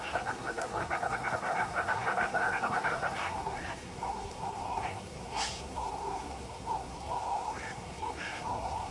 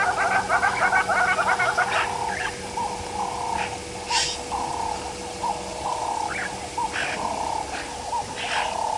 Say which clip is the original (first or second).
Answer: second